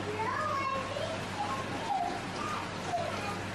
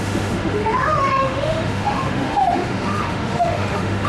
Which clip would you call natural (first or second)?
first